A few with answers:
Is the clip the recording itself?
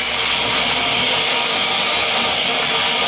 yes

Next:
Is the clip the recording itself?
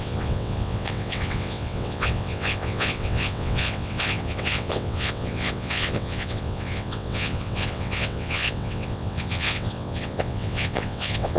no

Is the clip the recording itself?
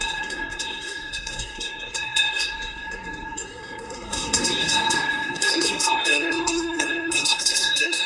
no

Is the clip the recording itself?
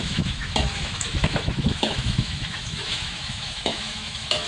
no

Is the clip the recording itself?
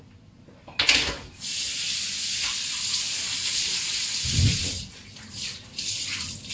yes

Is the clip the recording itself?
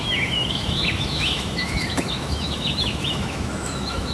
no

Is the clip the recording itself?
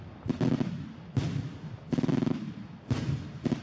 yes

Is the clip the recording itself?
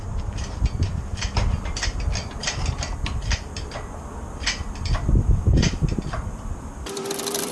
no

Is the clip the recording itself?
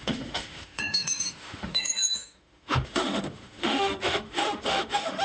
no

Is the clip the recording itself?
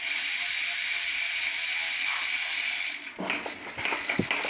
yes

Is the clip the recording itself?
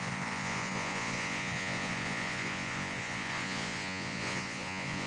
no